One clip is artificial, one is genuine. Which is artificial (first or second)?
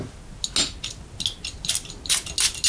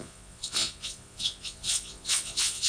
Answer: second